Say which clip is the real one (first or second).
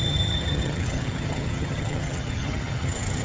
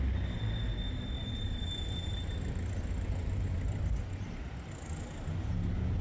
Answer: second